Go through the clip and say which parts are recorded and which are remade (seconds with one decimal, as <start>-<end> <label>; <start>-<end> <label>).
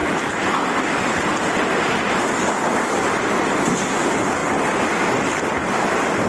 0.0-6.3 recorded